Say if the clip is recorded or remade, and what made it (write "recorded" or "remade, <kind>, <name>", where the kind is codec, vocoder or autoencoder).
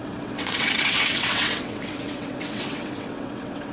remade, vocoder, WaveNeXt